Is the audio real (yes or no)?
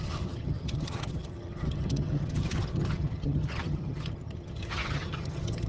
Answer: no